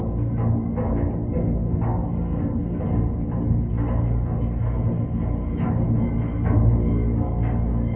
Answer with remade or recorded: recorded